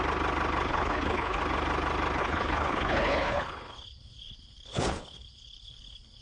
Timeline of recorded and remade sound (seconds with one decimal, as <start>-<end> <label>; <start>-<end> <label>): 0.0-0.7 recorded; 0.7-1.4 remade; 1.4-2.2 recorded; 2.2-6.2 remade